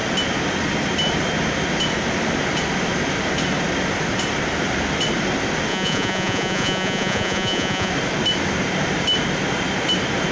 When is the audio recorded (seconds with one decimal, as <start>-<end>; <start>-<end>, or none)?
0.0-5.7; 7.9-10.3